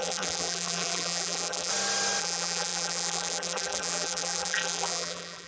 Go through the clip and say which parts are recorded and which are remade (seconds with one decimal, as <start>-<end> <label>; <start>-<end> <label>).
0.0-1.7 remade; 1.7-2.2 recorded; 2.2-5.5 remade